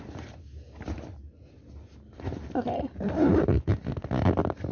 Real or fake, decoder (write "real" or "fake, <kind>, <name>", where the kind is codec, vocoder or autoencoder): real